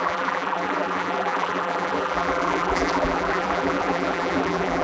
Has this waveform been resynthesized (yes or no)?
yes